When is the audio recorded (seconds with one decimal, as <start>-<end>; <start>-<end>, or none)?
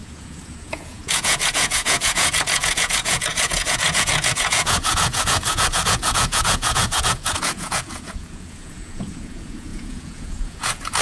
none